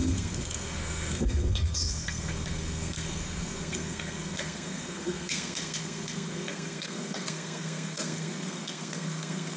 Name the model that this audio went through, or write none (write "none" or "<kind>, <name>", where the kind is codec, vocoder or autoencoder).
codec, SNAC